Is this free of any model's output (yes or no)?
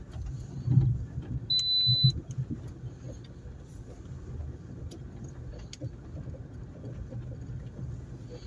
yes